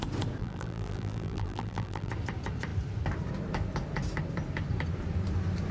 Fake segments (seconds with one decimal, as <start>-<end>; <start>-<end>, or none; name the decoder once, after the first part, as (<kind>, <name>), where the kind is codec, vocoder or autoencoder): 0.4-2.1 (vocoder, BigVGAN v2)